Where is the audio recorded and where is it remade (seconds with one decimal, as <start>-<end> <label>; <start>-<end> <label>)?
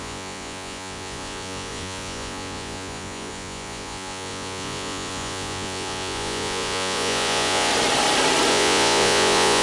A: 0.0-7.7 remade; 7.7-8.5 recorded; 8.5-9.6 remade